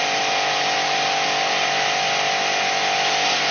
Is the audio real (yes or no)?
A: yes